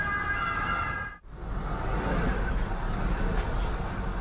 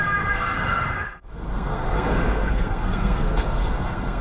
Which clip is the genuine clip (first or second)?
first